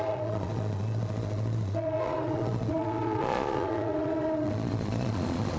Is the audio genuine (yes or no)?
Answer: no